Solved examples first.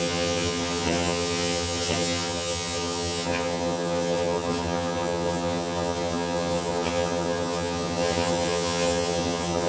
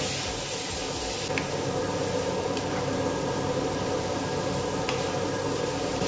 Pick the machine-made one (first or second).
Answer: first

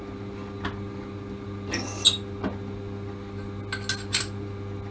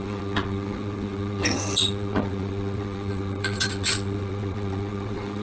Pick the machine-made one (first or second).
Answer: second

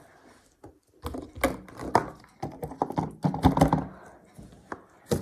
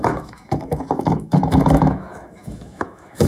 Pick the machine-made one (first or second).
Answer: second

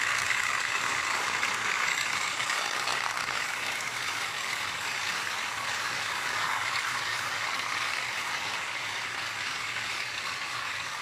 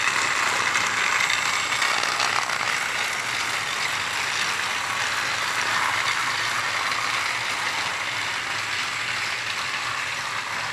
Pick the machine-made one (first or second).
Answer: first